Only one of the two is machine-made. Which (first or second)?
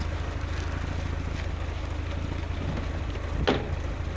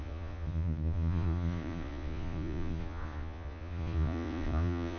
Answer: second